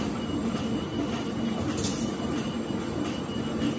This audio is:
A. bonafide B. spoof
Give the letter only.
A